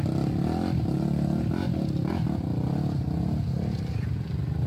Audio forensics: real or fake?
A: real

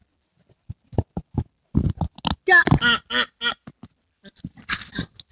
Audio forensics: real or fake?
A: real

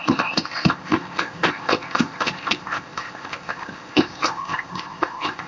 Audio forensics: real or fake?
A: fake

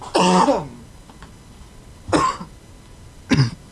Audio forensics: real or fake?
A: real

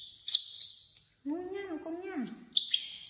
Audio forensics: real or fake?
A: real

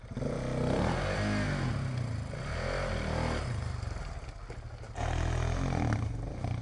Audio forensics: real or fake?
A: real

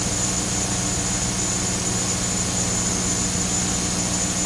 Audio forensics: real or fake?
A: real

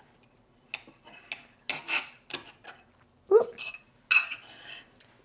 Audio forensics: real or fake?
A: real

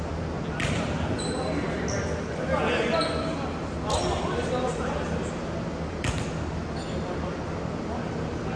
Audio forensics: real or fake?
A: real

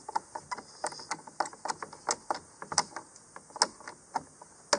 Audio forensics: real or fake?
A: real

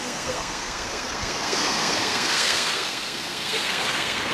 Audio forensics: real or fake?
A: fake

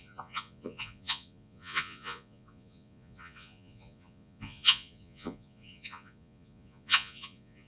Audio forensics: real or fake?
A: fake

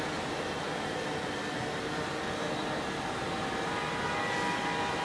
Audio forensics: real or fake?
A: real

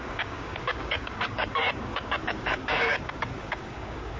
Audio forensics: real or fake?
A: fake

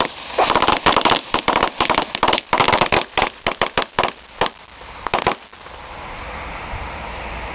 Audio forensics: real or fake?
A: real